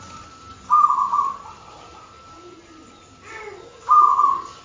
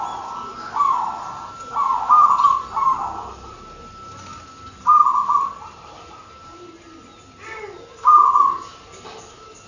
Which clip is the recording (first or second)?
second